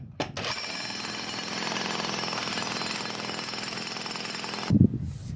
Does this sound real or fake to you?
real